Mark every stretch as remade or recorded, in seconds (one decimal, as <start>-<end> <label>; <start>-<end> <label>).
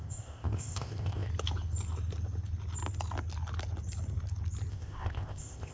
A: 0.0-1.3 remade; 1.3-4.7 recorded; 4.7-5.7 remade